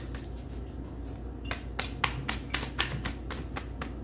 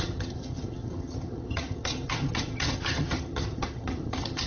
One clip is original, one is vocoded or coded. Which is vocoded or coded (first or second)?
second